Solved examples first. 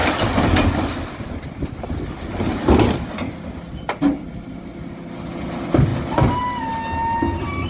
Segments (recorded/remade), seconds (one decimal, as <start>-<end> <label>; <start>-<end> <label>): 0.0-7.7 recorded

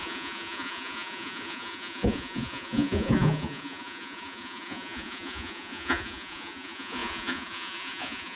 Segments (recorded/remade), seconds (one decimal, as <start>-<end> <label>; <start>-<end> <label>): 0.0-8.3 remade

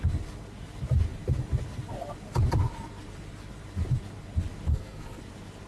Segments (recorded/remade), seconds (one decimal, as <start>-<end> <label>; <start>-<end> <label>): 0.0-4.7 recorded; 4.7-5.2 remade; 5.2-5.7 recorded